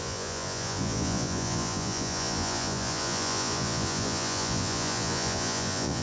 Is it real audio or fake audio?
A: fake